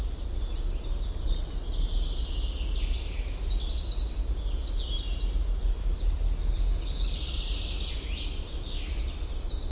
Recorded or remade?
recorded